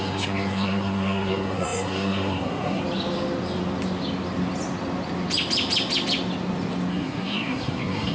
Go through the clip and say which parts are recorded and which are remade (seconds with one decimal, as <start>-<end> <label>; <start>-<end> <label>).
0.0-2.8 remade; 2.8-6.9 recorded; 6.9-8.1 remade